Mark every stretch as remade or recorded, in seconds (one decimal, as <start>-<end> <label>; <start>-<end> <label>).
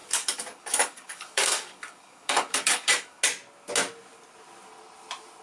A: 0.0-3.2 remade; 3.2-5.4 recorded